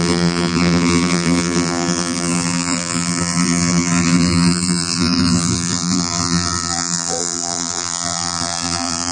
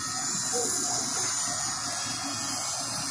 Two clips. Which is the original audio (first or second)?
second